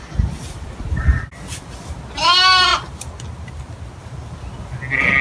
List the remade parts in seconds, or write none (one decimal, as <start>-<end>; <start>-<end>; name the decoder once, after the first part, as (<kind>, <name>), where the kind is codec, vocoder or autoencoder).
none